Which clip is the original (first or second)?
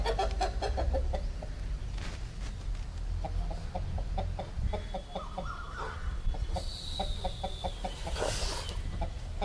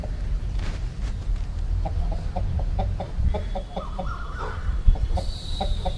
first